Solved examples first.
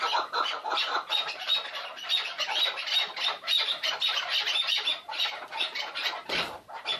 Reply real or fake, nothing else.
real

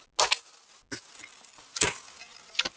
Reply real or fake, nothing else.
real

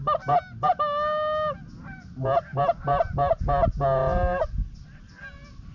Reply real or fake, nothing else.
real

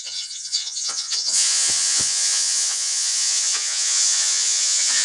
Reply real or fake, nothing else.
fake